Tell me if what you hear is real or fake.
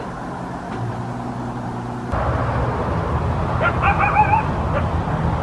real